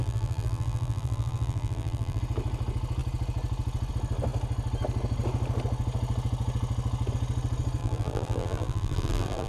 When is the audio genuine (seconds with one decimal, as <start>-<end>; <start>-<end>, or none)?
2.2-7.8